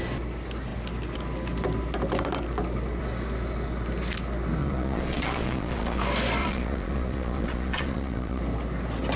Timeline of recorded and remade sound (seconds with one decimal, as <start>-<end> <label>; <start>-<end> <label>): 0.0-4.6 recorded; 4.6-6.0 remade; 6.0-6.4 recorded; 6.4-8.4 remade; 8.4-9.2 recorded